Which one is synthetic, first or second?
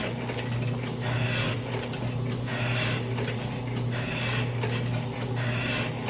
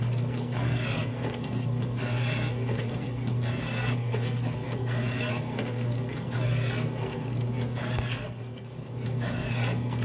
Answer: second